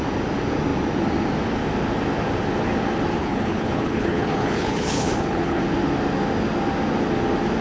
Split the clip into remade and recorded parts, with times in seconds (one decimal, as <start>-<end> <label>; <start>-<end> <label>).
0.0-3.2 recorded; 3.2-5.6 remade; 5.6-7.6 recorded